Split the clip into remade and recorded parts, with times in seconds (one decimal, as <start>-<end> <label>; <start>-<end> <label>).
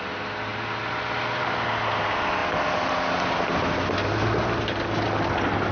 0.0-5.7 recorded